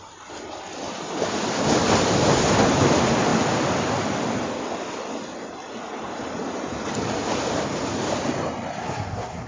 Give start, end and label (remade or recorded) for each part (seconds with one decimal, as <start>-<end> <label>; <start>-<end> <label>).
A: 0.0-8.8 recorded; 8.8-9.5 remade

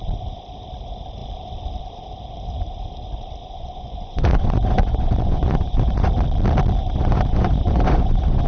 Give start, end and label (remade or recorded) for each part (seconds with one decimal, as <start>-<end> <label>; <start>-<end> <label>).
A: 0.0-3.4 recorded; 3.4-6.1 remade; 6.1-6.8 recorded; 6.8-8.5 remade